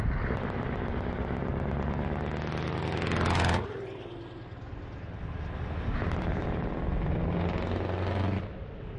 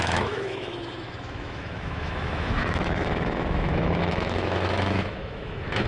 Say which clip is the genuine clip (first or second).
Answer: first